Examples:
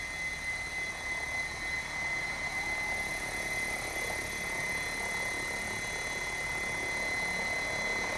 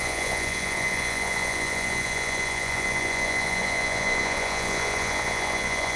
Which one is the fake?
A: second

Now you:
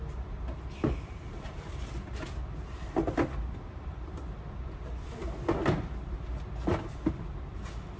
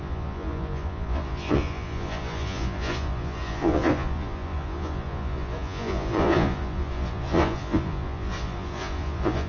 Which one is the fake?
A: second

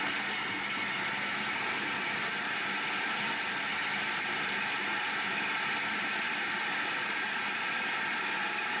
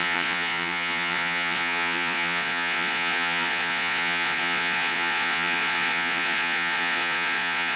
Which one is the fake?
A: second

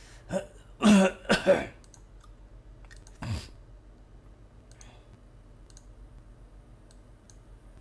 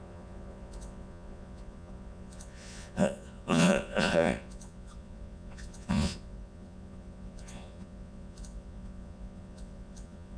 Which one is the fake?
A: second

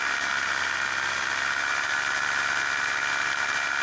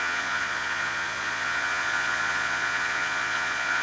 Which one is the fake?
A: second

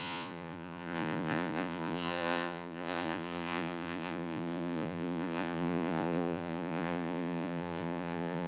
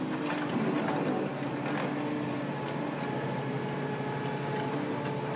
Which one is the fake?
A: first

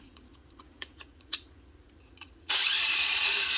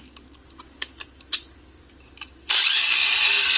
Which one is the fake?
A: first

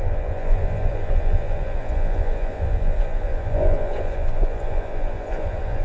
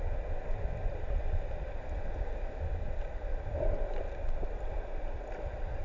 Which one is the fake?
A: first